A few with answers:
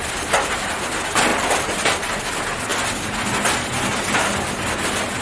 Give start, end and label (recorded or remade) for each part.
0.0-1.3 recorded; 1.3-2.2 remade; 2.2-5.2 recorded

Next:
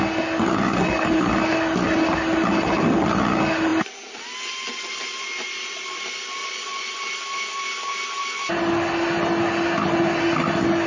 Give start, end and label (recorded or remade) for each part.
0.0-6.4 recorded; 6.4-7.0 remade; 7.0-10.9 recorded

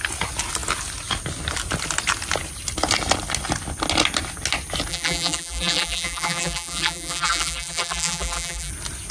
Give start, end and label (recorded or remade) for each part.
0.0-4.9 recorded; 4.9-8.7 remade; 8.7-9.1 recorded